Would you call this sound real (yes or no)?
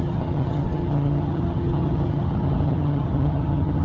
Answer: no